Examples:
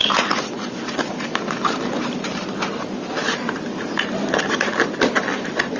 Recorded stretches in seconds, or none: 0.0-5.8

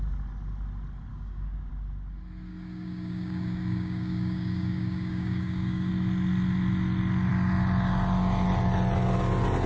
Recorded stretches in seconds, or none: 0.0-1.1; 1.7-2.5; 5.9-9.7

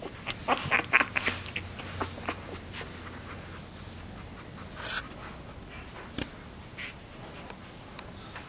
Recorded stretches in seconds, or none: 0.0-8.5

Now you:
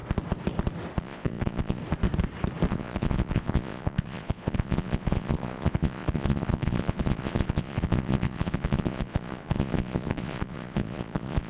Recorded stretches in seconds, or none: 0.0-1.0; 1.8-2.7

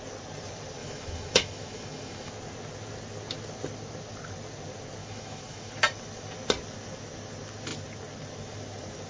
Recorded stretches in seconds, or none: 0.0-0.8; 2.3-5.0; 5.7-9.1

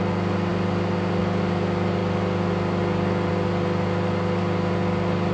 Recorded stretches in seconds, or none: 0.0-5.3

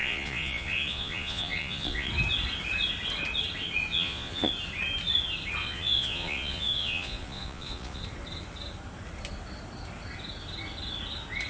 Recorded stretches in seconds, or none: 2.1-3.9; 4.5-5.6; 8.0-11.5